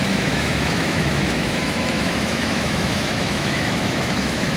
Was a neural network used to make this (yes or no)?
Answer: yes